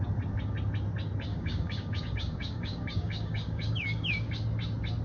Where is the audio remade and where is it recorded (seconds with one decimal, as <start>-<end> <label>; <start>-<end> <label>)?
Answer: 0.0-1.3 recorded; 1.3-4.3 remade; 4.3-5.0 recorded